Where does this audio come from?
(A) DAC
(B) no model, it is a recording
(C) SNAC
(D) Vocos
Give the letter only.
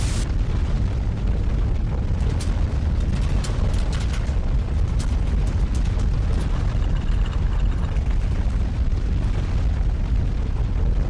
B